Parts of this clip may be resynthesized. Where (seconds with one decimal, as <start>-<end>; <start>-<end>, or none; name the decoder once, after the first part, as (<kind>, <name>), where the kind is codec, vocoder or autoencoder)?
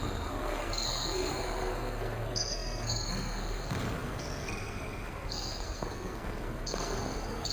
0.0-7.5 (codec, SNAC)